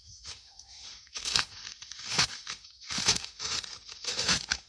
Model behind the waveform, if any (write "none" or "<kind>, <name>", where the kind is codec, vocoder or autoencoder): autoencoder, DAC-VAE